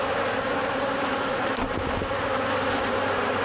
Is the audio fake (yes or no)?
no